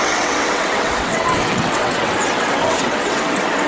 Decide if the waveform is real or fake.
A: fake